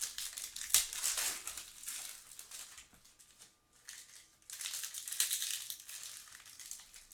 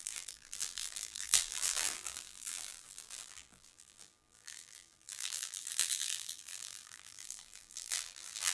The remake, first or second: second